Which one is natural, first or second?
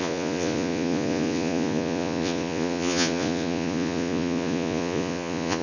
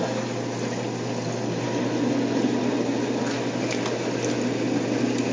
second